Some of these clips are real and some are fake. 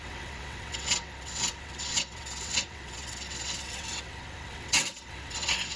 fake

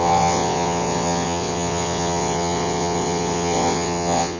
fake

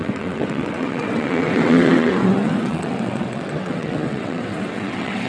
fake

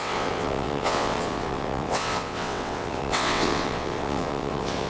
fake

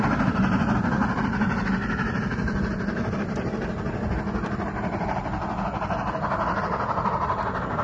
real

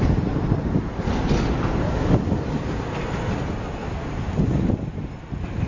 real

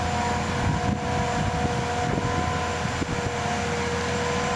real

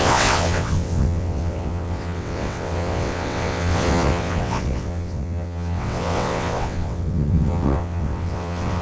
fake